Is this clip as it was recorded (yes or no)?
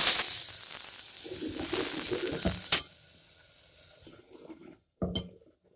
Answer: yes